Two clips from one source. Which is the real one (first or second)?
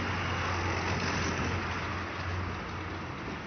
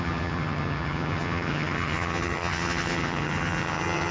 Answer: first